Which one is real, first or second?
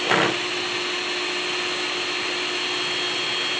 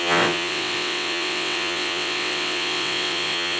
first